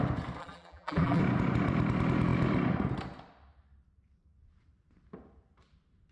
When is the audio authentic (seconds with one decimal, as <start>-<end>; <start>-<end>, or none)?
0.0-0.4; 1.2-6.1